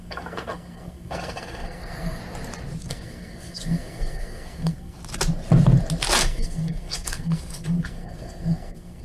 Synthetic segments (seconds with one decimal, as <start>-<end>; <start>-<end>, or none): 0.0-2.2; 2.8-5.0; 6.2-9.0